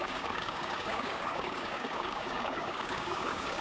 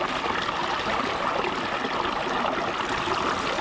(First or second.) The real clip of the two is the second